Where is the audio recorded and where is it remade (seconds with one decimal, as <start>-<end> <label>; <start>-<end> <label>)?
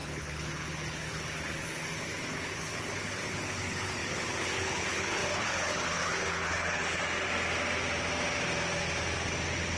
0.0-7.0 remade; 7.0-9.8 recorded